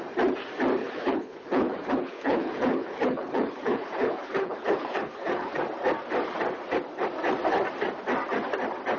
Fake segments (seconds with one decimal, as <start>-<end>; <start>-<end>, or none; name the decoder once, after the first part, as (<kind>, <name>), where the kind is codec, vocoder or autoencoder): 0.8-5.5 (codec, HILCodec)